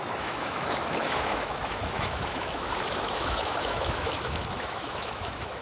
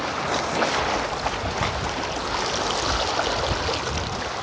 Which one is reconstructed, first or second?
first